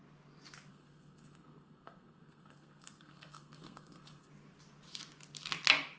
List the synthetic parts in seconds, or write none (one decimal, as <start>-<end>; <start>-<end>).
0.7-4.3